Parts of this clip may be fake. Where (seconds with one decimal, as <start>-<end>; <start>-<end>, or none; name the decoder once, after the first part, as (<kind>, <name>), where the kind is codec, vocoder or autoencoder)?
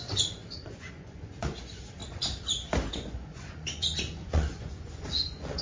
0.0-2.0 (vocoder, Vocos); 2.9-5.6